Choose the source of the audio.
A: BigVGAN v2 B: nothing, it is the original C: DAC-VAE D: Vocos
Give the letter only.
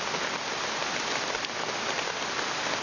B